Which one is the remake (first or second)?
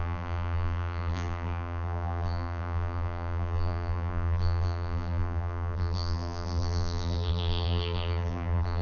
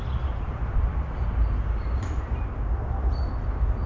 first